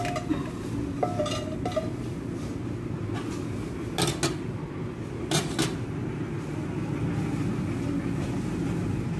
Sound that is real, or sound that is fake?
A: real